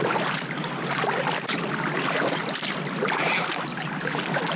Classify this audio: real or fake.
real